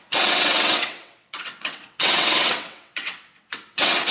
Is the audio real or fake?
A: fake